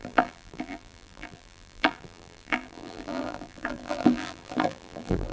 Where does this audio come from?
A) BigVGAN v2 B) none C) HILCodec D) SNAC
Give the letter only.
A